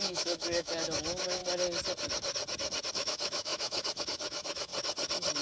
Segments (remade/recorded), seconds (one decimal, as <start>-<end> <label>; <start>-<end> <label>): 0.0-1.4 remade; 1.4-2.9 recorded; 2.9-4.7 remade; 4.7-5.4 recorded